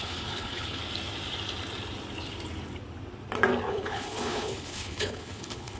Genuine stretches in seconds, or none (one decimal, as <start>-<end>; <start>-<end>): 0.8-3.7